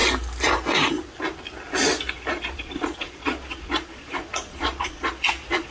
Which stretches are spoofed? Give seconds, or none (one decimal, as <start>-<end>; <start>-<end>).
2.3-5.7